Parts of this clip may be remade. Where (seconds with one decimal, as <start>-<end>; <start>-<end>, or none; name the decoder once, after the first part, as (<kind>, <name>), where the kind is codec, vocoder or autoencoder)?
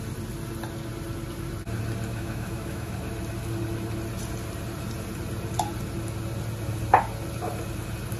2.1-2.9 (autoencoder, DAC-VAE)